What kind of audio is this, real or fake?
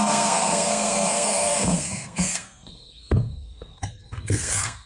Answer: fake